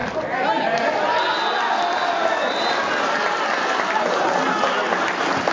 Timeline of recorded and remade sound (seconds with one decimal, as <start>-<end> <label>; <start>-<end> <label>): 0.0-5.5 recorded